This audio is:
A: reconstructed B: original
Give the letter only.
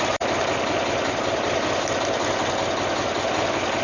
B